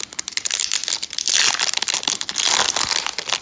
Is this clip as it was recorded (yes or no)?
yes